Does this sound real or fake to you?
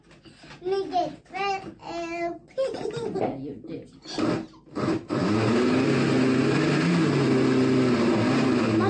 real